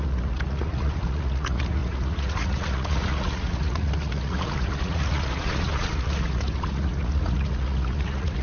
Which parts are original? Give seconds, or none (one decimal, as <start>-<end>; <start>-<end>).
none